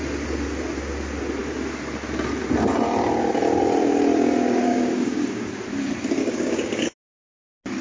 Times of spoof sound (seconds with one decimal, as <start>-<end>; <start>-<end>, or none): 4.7-5.5; 6.2-6.9